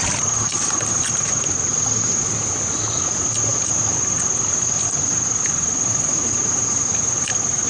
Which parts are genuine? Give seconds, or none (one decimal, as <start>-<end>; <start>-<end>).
0.0-7.7